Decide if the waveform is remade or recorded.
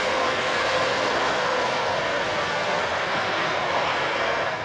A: remade